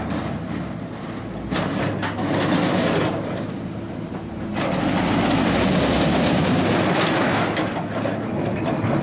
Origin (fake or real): real